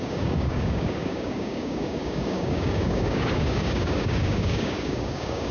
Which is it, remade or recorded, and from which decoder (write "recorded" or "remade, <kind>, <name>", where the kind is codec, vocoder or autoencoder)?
remade, codec, DAC